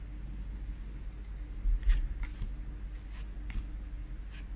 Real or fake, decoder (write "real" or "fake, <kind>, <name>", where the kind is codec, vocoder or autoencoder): real